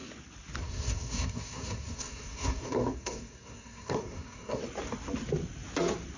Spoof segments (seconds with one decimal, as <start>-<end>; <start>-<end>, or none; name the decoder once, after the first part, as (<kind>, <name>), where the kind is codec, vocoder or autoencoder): 0.6-4.6 (codec, SNAC)